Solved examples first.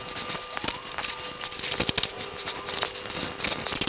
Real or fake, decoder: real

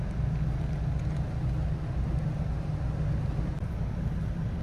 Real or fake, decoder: real